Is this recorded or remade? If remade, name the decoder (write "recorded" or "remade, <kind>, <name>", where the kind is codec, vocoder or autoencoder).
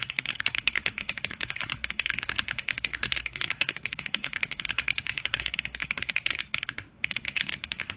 remade, codec, SNAC